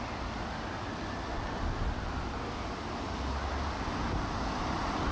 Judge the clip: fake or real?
real